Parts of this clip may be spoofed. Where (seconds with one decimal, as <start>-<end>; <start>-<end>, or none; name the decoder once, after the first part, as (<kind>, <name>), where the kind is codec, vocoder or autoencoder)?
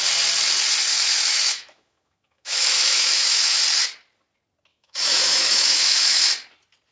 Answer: 0.9-3.6 (autoencoder, DAC-VAE); 4.7-6.3